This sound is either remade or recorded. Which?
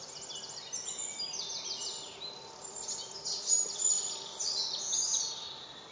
recorded